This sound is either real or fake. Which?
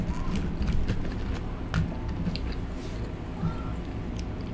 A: real